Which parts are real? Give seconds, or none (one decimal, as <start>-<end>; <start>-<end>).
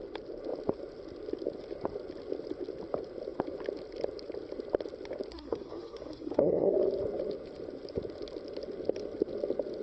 0.0-5.3; 6.7-9.8